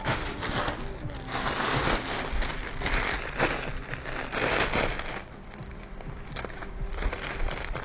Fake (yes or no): no